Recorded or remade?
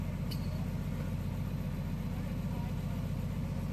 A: recorded